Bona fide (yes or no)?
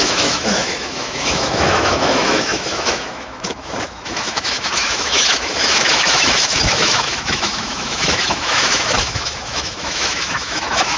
no